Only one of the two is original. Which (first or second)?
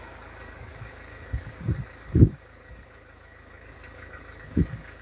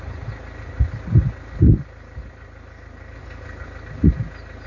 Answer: second